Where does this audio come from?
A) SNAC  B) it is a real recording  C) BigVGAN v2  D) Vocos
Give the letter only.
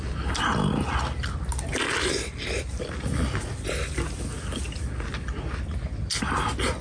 B